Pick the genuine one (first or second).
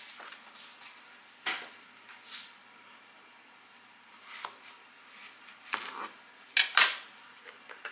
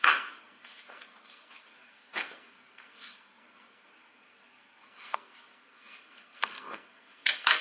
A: first